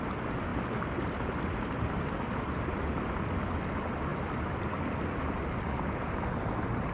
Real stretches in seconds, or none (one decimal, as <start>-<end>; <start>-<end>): 0.0-0.5; 1.8-4.1; 4.8-6.9